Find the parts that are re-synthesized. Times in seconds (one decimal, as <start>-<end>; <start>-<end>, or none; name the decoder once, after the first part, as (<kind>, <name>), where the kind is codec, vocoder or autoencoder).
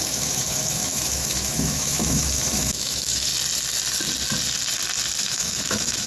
0.0-3.3 (autoencoder, DAC-VAE); 5.2-6.1